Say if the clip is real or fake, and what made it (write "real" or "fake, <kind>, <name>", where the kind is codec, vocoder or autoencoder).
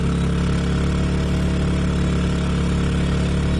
real